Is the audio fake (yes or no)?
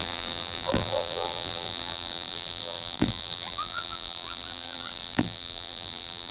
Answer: yes